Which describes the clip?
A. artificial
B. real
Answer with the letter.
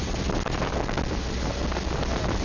B